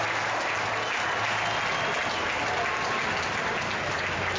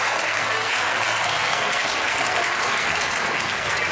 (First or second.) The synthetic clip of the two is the second